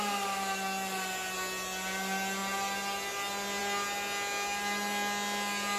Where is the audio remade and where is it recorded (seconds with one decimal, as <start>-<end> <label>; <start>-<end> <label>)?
0.0-5.8 recorded